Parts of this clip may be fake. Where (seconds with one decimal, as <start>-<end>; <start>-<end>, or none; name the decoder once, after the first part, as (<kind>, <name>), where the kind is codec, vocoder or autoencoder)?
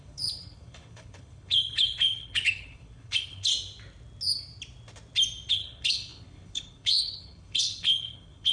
0.0-3.5 (codec, HILCodec); 5.5-8.5